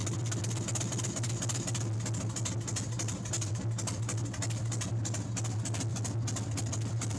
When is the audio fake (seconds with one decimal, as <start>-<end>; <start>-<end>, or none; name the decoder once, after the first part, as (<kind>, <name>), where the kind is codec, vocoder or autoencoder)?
none